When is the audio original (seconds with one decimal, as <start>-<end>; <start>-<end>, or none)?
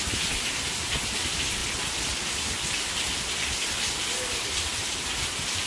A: 0.0-5.7